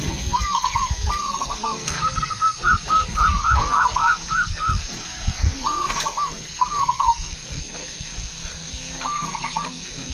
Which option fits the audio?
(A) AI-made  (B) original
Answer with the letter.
A